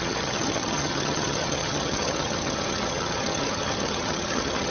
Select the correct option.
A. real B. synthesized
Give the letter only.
B